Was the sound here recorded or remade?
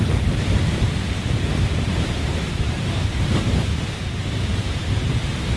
remade